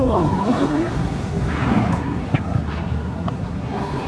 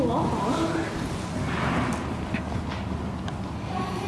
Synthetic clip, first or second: first